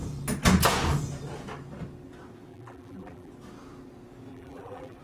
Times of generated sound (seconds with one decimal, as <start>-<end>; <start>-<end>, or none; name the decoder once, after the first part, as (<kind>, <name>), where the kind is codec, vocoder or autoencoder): 2.5-3.3 (vocoder, BigVGAN v2); 4.3-5.0